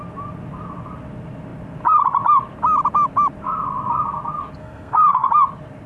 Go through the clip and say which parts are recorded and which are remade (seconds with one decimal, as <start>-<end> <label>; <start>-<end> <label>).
0.0-4.6 recorded; 4.6-5.3 remade; 5.3-5.9 recorded